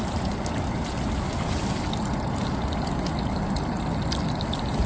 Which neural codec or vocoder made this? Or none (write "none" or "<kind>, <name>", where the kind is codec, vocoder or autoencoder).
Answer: none